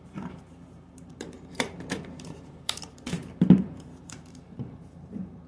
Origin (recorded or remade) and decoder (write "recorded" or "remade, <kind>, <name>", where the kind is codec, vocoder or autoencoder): remade, vocoder, BigVGAN v2